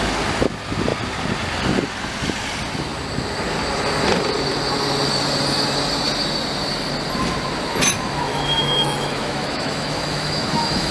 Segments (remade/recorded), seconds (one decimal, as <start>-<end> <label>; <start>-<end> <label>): 0.0-8.3 recorded; 8.3-10.9 remade